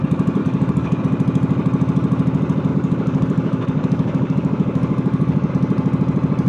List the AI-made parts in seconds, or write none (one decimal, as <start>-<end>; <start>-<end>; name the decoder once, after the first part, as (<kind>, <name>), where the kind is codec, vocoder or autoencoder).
0.4-1.0 (codec, DAC); 2.7-5.5